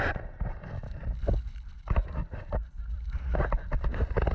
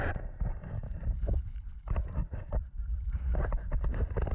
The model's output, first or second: second